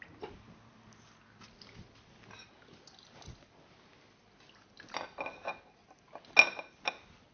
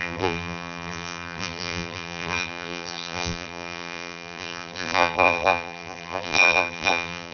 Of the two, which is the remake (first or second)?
second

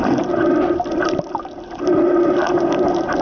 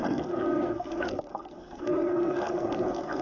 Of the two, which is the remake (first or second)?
second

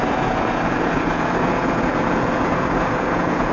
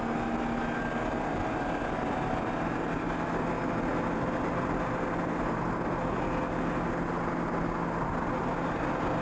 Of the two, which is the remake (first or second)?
first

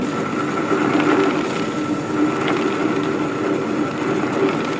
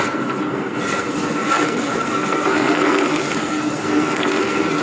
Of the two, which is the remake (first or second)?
second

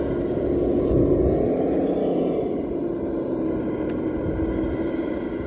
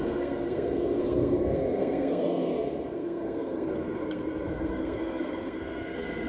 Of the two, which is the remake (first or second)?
second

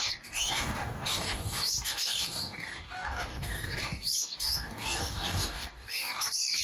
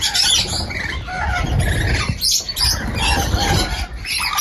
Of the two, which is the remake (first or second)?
first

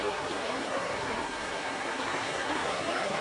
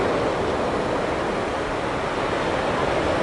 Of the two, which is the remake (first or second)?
first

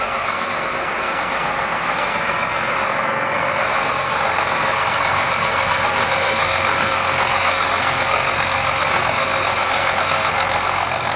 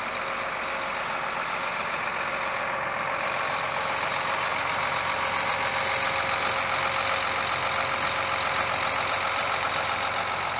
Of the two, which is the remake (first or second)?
first